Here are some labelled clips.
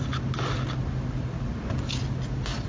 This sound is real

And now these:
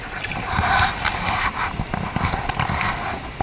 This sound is real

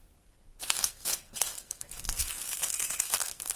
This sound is fake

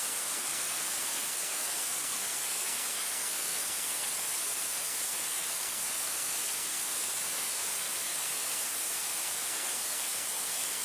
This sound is fake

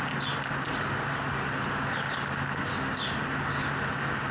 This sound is real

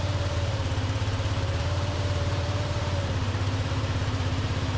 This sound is fake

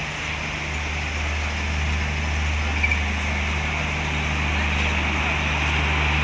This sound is real